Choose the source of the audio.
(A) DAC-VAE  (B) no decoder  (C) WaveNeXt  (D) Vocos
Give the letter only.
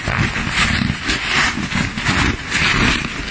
B